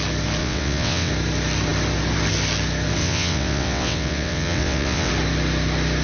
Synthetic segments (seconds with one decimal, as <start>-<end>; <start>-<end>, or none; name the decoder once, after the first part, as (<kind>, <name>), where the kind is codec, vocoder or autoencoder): 0.4-1.1 (vocoder, WaveNeXt); 3.0-5.1